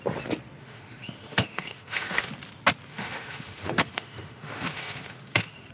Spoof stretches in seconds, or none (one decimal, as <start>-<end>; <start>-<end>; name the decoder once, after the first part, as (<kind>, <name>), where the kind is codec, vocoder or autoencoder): 0.6-2.3 (autoencoder, DAC-VAE); 2.9-5.7